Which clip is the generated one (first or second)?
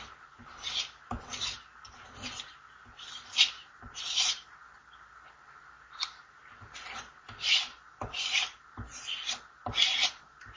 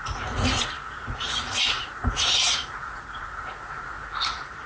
second